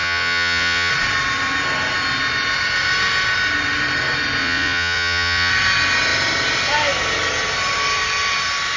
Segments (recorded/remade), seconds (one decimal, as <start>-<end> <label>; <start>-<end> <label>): 0.0-0.9 remade; 0.9-4.4 recorded; 4.4-5.5 remade; 5.5-8.8 recorded